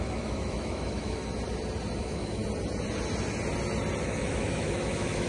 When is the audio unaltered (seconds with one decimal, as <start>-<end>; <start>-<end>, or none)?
1.2-2.0; 2.4-4.0